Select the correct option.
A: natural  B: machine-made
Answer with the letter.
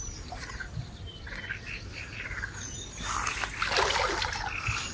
A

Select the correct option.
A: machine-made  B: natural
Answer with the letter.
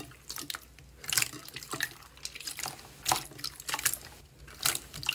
B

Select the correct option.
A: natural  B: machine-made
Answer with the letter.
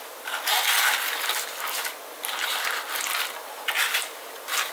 A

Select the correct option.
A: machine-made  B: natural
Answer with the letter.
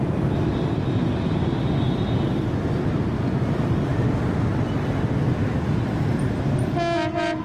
B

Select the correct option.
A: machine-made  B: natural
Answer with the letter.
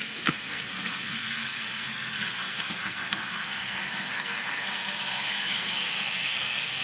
A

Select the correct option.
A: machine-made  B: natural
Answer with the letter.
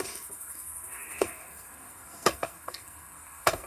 A